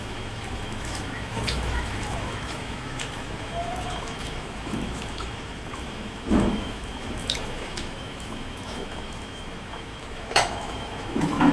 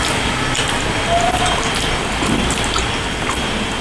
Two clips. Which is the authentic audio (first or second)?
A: second